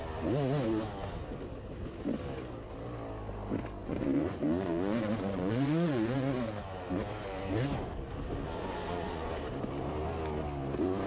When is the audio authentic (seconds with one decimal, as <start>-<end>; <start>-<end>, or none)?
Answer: 0.0-3.8; 6.6-8.6; 9.3-11.1